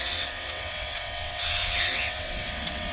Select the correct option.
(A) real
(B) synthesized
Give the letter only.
B